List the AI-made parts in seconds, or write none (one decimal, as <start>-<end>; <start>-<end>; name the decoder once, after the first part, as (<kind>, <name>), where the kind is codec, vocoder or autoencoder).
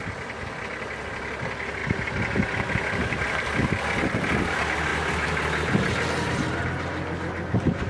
none